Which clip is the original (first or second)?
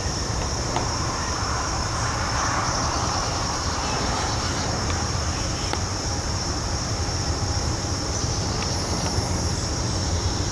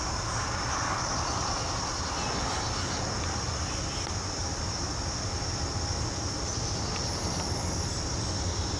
second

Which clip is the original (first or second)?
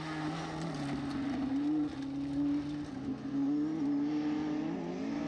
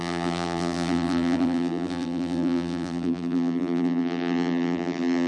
first